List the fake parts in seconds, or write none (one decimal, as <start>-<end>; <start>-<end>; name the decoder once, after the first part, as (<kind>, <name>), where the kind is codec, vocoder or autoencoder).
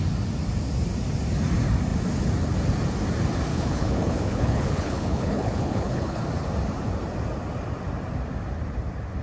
3.5-6.2 (codec, HILCodec)